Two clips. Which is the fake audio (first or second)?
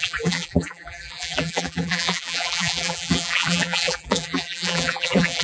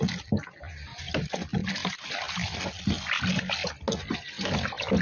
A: first